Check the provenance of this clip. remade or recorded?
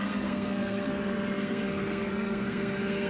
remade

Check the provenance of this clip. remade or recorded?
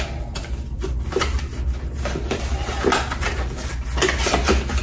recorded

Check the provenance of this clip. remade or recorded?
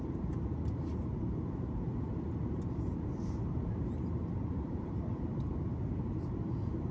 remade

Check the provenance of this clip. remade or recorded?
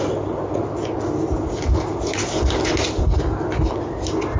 recorded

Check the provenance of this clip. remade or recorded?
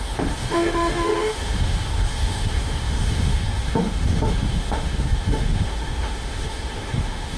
remade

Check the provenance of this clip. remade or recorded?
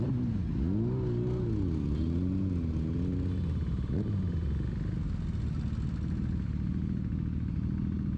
recorded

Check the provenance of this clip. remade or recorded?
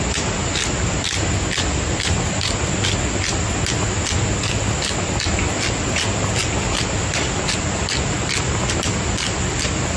recorded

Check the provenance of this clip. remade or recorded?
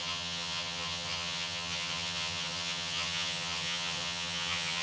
remade